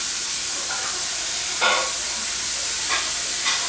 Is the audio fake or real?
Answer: fake